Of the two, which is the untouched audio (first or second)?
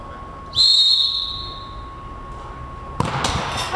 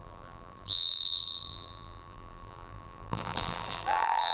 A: first